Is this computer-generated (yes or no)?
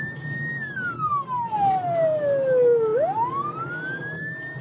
no